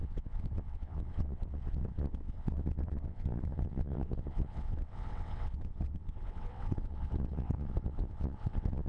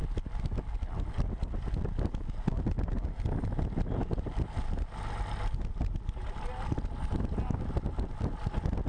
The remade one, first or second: first